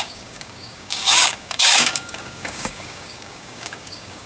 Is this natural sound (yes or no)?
no